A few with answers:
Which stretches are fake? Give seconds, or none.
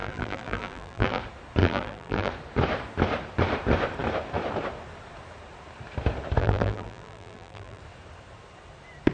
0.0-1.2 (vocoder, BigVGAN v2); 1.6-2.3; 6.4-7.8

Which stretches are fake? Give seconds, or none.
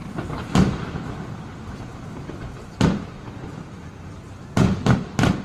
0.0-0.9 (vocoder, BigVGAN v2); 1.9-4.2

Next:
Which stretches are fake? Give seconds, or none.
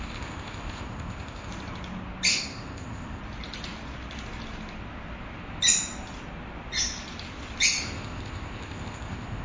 0.0-1.5 (codec, ZipCodec); 2.3-3.2; 7.8-9.4